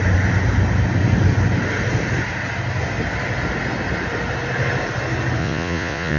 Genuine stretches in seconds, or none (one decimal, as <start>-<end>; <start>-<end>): 0.0-5.4